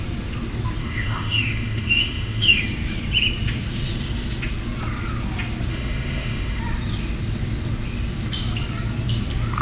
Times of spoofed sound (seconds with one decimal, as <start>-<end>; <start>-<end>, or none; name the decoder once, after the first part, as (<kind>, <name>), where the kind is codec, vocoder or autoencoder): 0.8-2.6 (autoencoder, DAC-VAE); 5.7-6.6